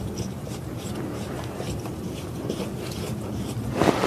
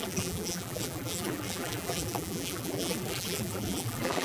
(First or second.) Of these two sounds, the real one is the first